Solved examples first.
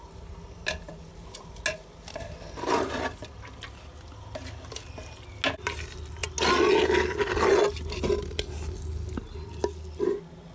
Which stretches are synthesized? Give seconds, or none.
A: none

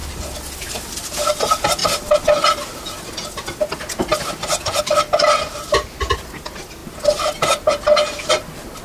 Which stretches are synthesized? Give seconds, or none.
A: 0.5-1.8 (vocoder, BigVGAN v2); 4.8-6.8; 8.3-8.8

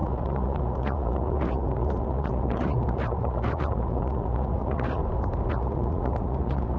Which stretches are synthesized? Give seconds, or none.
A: 0.0-5.0 (vocoder, Vocos); 5.5-6.8

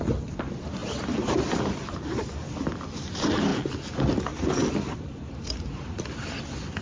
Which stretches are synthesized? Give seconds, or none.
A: 0.0-3.5 (vocoder, BigVGAN v2); 4.5-6.8

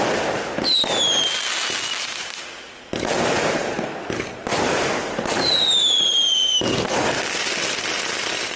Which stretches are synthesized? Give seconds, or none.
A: none

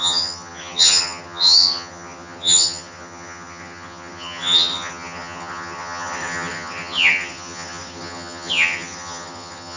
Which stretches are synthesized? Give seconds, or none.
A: 0.0-9.8 (vocoder, HiFi-GAN)

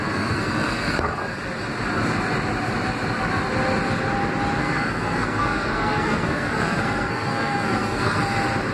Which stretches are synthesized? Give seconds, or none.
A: 0.0-1.1 (codec, SNAC); 4.6-8.2